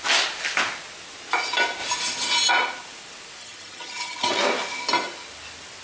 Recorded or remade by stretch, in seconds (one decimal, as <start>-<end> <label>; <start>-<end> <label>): 0.0-3.4 recorded; 3.4-4.4 remade; 4.4-5.8 recorded